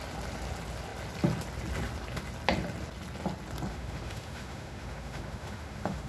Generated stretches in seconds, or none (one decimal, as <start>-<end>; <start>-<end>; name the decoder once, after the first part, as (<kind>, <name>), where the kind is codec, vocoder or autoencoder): 3.7-6.1 (autoencoder, DAC-VAE)